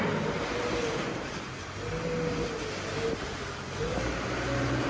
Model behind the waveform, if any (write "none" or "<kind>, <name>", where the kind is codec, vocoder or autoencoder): none